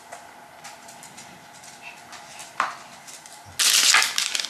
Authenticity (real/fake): real